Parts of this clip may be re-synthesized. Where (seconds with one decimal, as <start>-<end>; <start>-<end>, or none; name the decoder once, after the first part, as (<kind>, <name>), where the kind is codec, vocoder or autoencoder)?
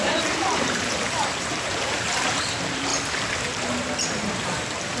0.0-2.9 (vocoder, BigVGAN v2)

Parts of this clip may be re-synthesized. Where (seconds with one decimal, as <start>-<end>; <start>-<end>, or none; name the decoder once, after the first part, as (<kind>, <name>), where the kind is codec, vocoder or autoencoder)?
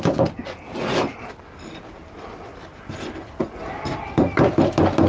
none